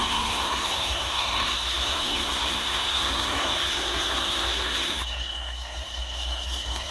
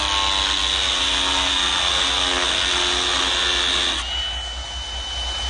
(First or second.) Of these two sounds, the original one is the second